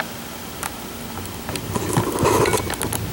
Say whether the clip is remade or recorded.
recorded